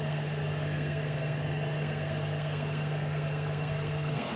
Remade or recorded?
remade